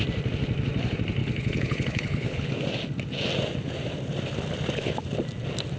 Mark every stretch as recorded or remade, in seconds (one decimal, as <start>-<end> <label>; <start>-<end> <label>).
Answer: 0.0-1.2 recorded; 1.2-2.5 remade; 2.5-5.8 recorded